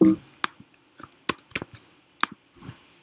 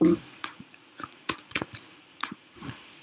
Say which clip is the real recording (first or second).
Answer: first